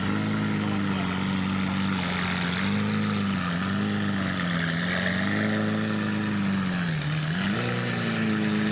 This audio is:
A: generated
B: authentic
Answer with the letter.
B